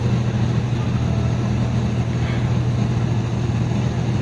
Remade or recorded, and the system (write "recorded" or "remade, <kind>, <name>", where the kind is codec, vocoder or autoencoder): recorded